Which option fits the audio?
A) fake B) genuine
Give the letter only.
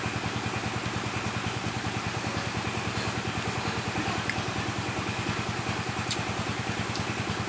B